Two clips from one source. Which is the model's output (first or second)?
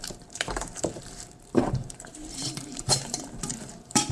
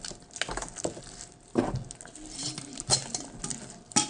first